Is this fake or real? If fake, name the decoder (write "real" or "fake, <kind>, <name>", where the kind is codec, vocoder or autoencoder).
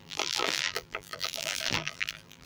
fake, vocoder, BigVGAN v2